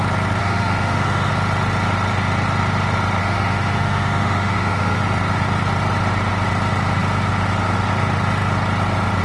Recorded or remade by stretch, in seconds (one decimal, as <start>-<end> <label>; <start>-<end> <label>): 0.0-0.4 recorded; 0.4-1.3 remade; 1.3-3.2 recorded; 3.2-5.0 remade; 5.0-9.2 recorded

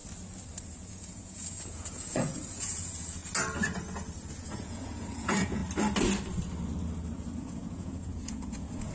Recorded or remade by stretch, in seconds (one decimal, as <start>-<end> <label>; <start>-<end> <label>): 0.0-0.6 recorded; 0.6-3.2 remade; 3.2-4.3 recorded; 4.3-5.6 remade; 5.6-7.4 recorded; 7.4-8.9 remade